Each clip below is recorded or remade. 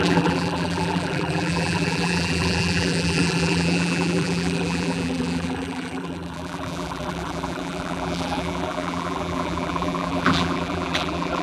remade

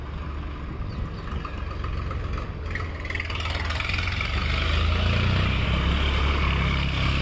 recorded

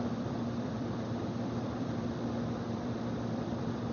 remade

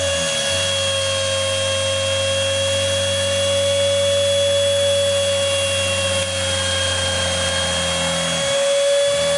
recorded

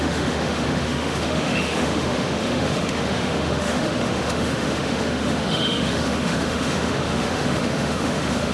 remade